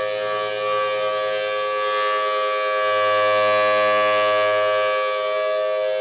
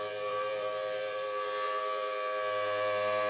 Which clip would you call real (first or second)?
first